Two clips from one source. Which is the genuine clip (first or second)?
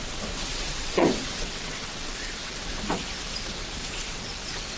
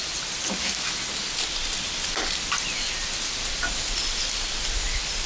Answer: second